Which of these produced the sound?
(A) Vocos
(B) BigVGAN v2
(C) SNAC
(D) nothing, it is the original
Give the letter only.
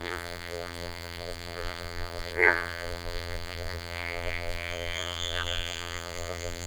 B